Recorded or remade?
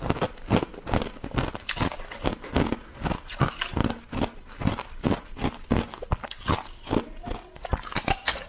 recorded